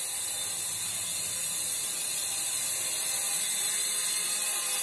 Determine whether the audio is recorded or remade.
remade